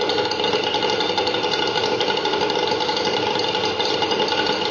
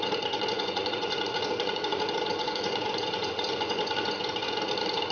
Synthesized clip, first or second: second